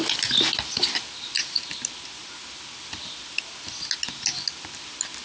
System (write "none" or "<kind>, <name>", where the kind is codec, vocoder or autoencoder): none